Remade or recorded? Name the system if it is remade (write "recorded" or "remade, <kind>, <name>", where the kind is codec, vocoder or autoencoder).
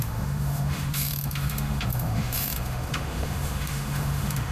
remade, autoencoder, DAC-VAE